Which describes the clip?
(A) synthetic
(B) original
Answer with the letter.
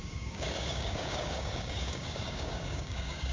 A